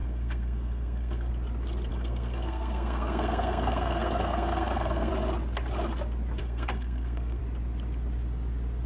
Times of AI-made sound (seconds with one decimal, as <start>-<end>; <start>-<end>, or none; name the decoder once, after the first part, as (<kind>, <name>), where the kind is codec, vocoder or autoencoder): 0.0-1.3 (codec, SNAC); 1.9-5.1; 6.4-7.4